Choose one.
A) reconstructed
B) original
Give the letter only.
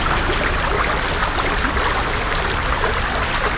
B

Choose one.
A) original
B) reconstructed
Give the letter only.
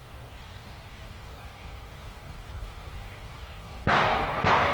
B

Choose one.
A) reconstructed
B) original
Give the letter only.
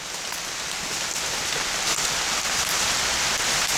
B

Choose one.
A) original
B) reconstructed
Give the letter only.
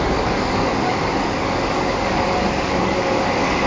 B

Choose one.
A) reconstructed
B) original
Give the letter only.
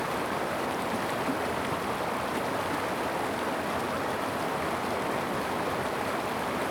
B